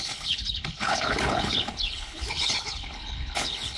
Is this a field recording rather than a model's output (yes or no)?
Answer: no